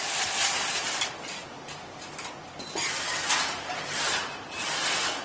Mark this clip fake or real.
real